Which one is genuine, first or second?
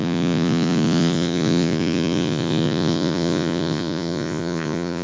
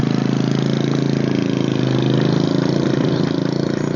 second